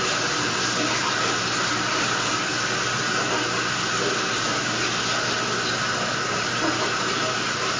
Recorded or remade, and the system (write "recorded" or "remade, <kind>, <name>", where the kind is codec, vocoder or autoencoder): recorded